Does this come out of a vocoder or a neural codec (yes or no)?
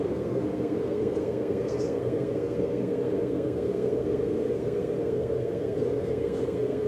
yes